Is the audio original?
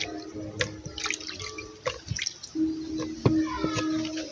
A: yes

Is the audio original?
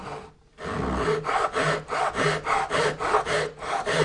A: yes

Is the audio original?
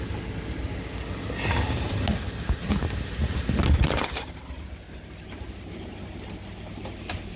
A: yes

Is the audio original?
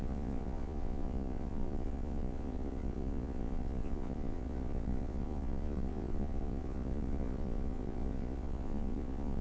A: no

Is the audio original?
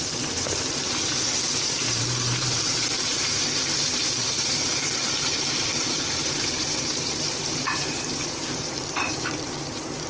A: no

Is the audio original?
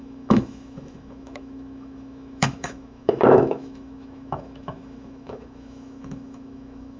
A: no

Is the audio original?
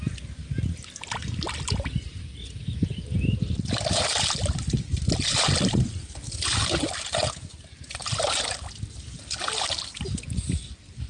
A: yes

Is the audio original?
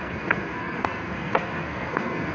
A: no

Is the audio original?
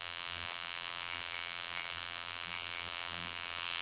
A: no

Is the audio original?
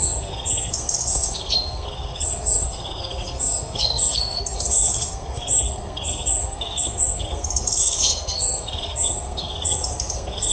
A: no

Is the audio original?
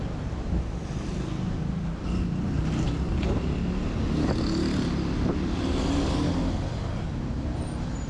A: yes